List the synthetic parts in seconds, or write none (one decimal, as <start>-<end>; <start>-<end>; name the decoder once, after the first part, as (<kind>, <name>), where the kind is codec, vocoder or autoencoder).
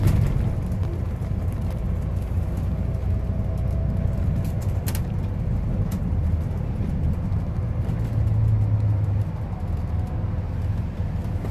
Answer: none